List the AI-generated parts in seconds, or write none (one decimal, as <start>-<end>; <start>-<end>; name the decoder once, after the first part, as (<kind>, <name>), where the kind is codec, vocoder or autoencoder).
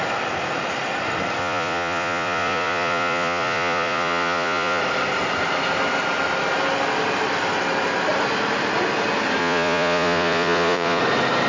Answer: 1.4-4.8 (vocoder, Vocos); 9.4-11.0